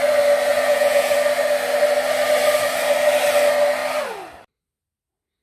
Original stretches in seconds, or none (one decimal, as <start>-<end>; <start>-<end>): 0.0-0.5; 1.1-5.4